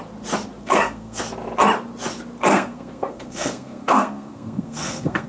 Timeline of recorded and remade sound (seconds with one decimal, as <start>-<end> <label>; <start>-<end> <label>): 0.0-0.6 recorded; 0.6-1.2 remade; 1.2-2.5 recorded; 2.5-5.3 remade

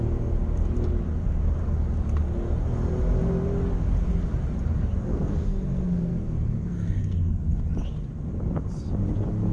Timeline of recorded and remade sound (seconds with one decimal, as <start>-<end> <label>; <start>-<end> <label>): 0.0-5.1 recorded; 5.1-7.6 remade; 7.6-9.5 recorded

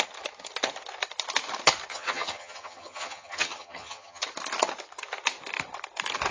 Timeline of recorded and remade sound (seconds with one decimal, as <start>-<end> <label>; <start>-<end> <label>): 0.0-1.9 recorded; 1.9-4.2 remade; 4.2-6.3 recorded

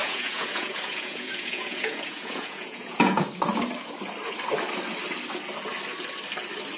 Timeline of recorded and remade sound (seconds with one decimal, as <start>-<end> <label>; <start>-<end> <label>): 0.0-3.3 remade; 3.3-6.8 recorded

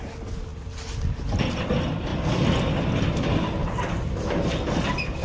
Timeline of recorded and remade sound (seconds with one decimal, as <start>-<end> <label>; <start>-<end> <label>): 0.0-5.2 recorded

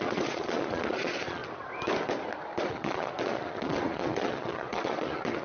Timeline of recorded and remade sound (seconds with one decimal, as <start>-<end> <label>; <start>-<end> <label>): 0.0-1.4 remade; 1.4-2.7 recorded; 2.7-5.4 remade

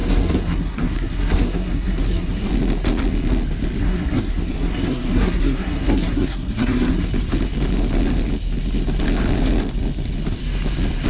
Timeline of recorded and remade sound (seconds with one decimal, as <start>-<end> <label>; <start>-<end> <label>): 0.0-2.5 remade; 2.5-3.8 recorded; 3.8-7.1 remade; 7.1-11.1 recorded

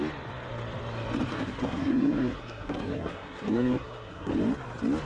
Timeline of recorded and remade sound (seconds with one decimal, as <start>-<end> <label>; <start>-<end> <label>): 0.0-1.3 recorded; 1.3-4.3 remade; 4.3-5.1 recorded